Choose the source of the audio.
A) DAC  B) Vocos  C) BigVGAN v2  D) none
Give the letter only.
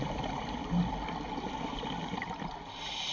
D